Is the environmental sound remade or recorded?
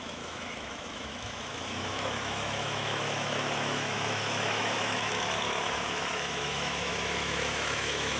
remade